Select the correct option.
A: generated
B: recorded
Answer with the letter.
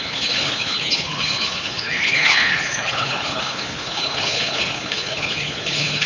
A